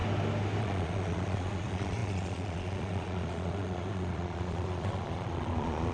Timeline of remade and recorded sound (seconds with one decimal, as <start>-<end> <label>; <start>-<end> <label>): 0.0-0.6 recorded; 0.6-5.9 remade